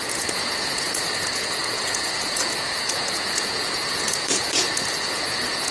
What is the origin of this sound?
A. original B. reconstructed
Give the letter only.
B